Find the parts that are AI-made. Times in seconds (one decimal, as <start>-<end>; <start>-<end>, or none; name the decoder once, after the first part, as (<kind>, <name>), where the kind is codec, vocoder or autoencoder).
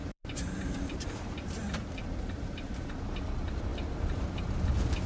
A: 0.0-3.0 (vocoder, BigVGAN v2)